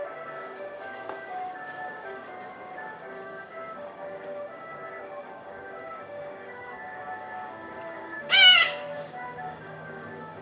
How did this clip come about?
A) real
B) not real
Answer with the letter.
B